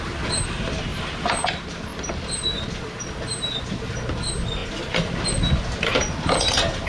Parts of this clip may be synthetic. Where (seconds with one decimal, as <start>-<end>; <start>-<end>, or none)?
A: 1.9-3.6